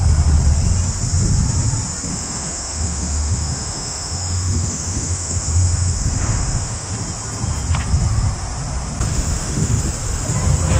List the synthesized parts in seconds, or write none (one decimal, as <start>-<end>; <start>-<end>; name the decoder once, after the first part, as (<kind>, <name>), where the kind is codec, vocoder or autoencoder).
2.1-6.9 (autoencoder, DAC-VAE); 9.1-9.8